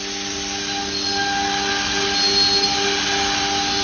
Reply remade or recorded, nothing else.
recorded